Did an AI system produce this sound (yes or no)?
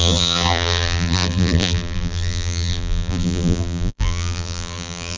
yes